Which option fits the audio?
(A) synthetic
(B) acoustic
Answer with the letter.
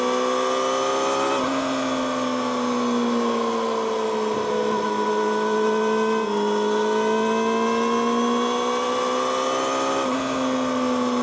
B